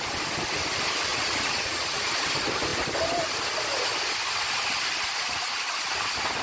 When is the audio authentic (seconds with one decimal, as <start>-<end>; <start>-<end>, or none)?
0.0-1.1; 2.1-6.4